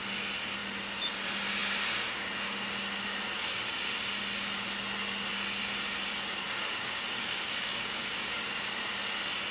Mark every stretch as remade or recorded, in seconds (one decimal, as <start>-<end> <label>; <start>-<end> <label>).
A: 0.0-6.6 recorded; 6.6-8.6 remade; 8.6-9.5 recorded